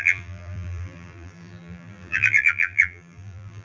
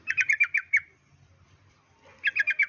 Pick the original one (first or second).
second